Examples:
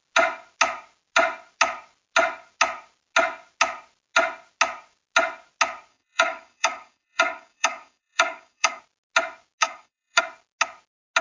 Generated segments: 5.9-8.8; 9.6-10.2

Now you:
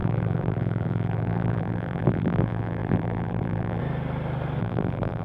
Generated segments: 0.0-3.8; 4.6-5.2

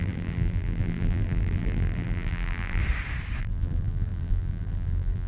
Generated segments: 0.0-2.8; 3.4-5.3

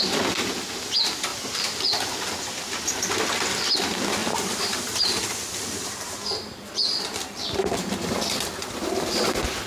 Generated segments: 1.3-2.5; 4.2-8.5